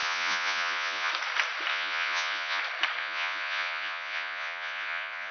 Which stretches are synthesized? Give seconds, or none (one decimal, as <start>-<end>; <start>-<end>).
0.0-1.1; 1.7-2.6; 3.0-5.3